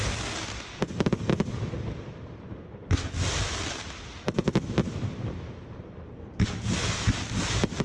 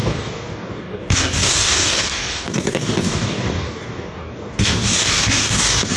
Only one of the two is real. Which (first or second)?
first